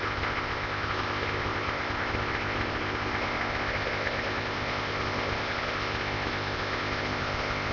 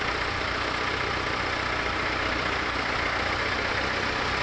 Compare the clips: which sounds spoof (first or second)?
first